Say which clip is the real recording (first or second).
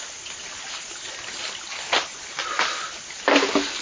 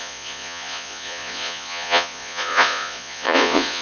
first